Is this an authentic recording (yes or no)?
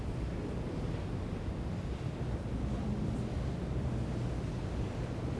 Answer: yes